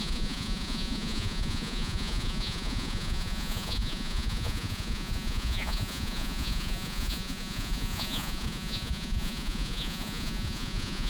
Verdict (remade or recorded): remade